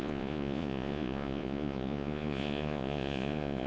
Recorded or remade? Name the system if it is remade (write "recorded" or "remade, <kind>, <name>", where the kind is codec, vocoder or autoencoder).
remade, vocoder, Vocos